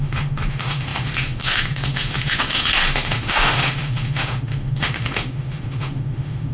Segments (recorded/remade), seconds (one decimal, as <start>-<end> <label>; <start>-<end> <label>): 0.0-6.5 remade